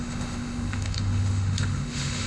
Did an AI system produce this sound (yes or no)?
yes